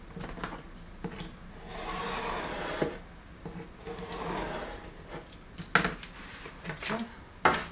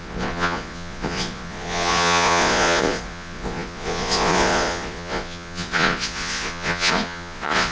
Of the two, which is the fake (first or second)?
second